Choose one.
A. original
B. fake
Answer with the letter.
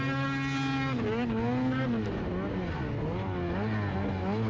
A